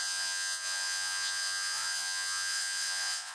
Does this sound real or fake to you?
fake